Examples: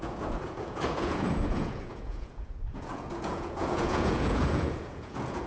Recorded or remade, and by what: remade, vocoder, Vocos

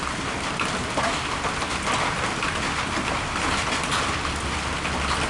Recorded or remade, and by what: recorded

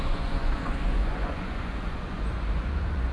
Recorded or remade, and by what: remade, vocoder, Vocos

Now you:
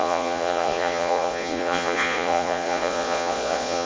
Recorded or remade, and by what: remade, vocoder, Vocos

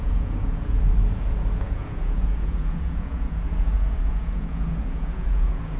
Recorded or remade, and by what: remade, vocoder, Vocos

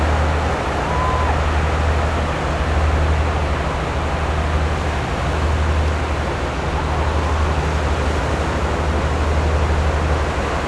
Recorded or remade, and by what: recorded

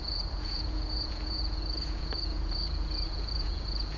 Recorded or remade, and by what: remade, vocoder, Vocos